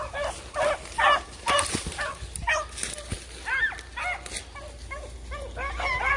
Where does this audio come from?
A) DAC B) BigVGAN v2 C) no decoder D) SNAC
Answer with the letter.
C